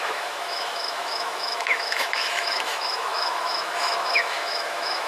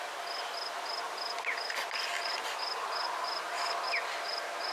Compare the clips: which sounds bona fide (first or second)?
second